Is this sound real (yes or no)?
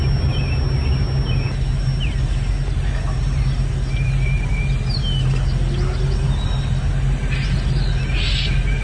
yes